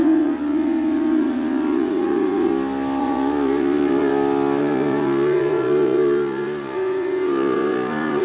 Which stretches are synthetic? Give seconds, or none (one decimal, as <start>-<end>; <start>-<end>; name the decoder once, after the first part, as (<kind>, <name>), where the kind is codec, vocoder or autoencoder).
0.0-2.5 (vocoder, Vocos); 3.0-4.1; 4.6-8.2